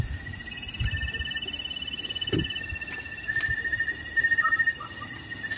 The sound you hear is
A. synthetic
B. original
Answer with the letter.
A